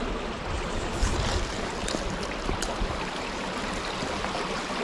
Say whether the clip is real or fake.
real